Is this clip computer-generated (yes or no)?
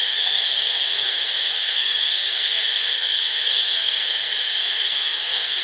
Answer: yes